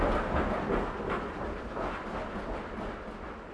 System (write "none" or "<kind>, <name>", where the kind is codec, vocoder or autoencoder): none